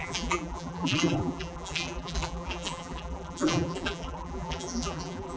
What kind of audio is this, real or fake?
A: fake